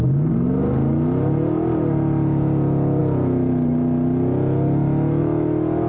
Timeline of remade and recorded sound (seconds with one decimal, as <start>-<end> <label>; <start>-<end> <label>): 0.0-5.9 recorded